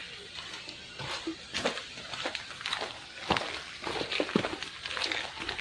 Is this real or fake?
real